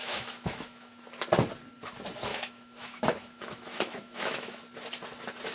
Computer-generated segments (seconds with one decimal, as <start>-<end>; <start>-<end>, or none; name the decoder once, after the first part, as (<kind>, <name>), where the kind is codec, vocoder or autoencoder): 0.0-1.0 (autoencoder, DAC-VAE); 2.3-4.6